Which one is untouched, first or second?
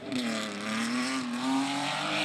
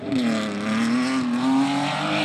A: second